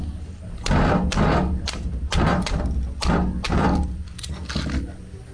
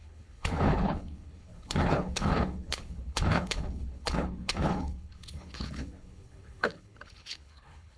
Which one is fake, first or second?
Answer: second